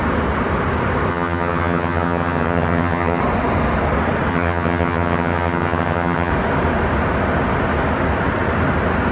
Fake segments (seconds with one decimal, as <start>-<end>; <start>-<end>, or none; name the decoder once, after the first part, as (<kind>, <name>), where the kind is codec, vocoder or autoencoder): 1.1-3.2 (vocoder, HiFi-GAN); 4.3-6.3